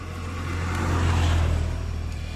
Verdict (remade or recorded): recorded